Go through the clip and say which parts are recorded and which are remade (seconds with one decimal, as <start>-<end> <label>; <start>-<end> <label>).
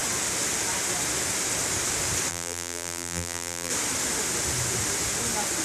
0.0-2.3 recorded; 2.3-3.7 remade; 3.7-5.6 recorded